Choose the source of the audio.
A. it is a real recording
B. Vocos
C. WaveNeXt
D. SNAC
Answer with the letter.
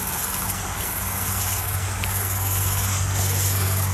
D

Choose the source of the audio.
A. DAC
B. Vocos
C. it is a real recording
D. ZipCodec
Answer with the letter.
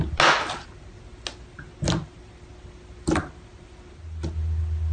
C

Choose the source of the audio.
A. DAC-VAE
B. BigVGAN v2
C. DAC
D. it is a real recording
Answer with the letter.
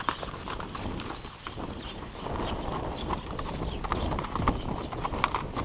B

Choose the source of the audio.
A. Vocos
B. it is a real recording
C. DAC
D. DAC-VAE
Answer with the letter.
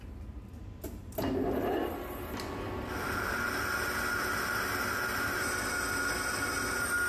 B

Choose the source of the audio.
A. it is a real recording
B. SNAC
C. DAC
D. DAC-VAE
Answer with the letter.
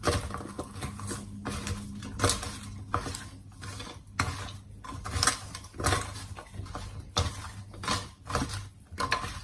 A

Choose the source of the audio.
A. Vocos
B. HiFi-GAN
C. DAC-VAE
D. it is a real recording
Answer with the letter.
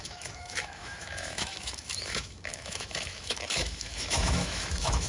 C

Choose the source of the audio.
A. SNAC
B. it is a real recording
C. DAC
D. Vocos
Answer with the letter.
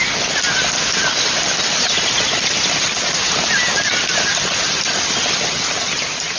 B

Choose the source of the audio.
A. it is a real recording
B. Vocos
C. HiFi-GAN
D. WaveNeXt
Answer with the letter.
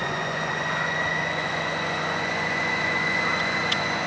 B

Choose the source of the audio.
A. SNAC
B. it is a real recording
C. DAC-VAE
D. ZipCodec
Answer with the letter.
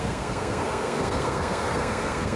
A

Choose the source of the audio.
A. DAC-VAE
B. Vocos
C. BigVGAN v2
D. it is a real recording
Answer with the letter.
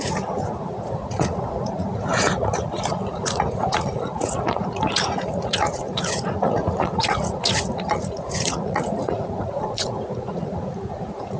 B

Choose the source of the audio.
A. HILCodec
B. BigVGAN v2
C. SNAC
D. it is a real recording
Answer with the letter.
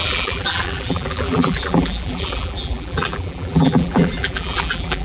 B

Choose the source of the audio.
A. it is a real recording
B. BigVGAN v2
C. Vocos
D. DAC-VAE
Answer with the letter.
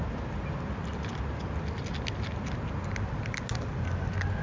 A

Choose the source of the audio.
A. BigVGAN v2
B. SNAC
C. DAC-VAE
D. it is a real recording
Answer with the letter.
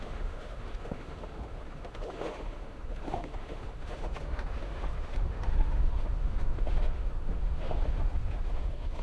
C